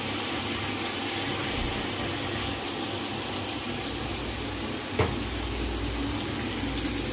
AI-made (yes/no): no